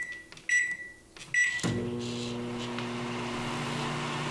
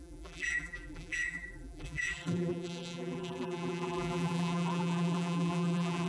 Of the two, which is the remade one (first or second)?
second